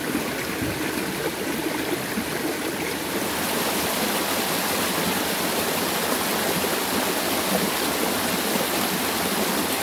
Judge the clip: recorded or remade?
recorded